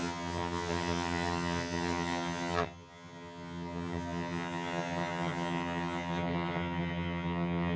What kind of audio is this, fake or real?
fake